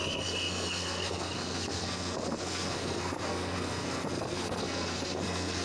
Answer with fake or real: fake